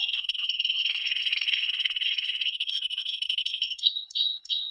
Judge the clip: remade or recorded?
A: remade